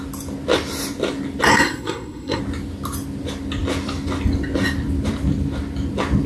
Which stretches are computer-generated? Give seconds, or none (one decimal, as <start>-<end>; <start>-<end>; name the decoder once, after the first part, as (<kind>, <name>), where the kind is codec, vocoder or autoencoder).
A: 1.5-2.4 (codec, SNAC)